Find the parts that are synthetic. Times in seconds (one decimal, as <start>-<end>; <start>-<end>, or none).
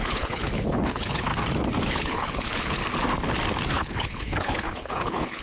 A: 0.0-1.3; 1.9-2.8; 3.7-5.4